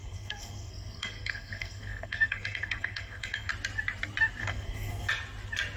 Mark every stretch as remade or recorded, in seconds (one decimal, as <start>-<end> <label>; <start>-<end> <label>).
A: 0.0-3.5 remade; 3.5-4.4 recorded; 4.4-5.1 remade; 5.1-5.8 recorded